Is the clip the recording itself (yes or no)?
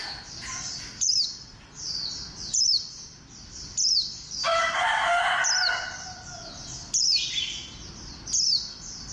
no